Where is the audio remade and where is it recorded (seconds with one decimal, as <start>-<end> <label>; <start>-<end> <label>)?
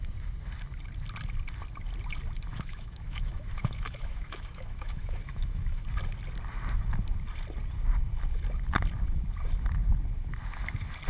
0.0-2.5 recorded; 2.5-5.8 remade; 5.8-11.1 recorded